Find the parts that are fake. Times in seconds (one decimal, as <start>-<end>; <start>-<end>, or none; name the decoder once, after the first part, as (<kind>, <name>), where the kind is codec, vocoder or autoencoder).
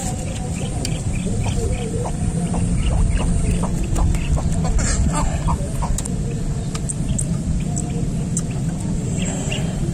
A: 0.0-4.4 (vocoder, BigVGAN v2)